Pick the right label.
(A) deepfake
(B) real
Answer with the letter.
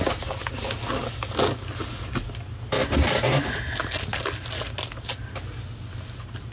B